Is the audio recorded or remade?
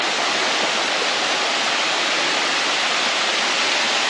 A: recorded